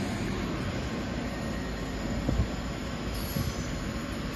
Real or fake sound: real